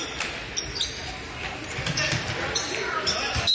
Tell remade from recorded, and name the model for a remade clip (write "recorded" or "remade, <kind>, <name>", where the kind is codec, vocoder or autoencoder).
recorded